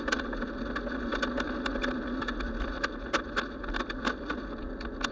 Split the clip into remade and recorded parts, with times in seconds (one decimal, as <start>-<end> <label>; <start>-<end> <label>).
0.0-5.1 recorded